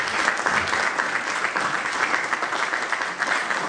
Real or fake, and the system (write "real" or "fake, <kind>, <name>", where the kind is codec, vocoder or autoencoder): real